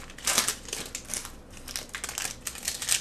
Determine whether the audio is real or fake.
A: real